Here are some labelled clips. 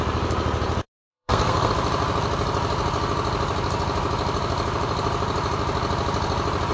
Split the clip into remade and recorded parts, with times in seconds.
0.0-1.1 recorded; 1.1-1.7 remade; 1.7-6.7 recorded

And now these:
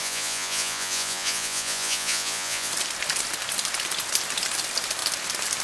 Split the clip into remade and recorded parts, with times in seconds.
0.0-2.7 remade; 2.7-5.6 recorded

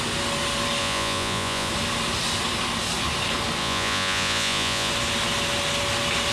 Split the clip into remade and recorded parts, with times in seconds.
0.0-0.8 recorded; 0.8-1.7 remade; 1.7-3.6 recorded; 3.6-4.9 remade; 4.9-6.3 recorded